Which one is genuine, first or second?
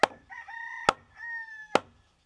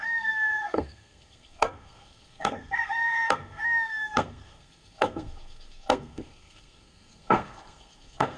first